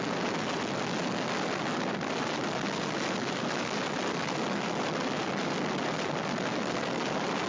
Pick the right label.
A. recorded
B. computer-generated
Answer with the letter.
A